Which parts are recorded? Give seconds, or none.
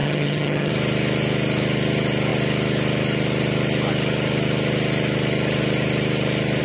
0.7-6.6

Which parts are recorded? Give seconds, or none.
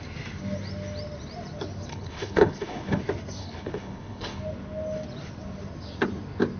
0.0-1.9; 3.0-3.4; 4.4-6.6